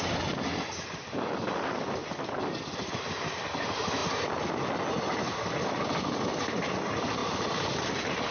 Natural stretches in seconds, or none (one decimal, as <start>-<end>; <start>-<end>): 0.0-7.2; 7.7-8.3